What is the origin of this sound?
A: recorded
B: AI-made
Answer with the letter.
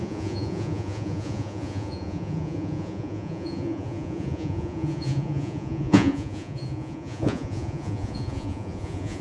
B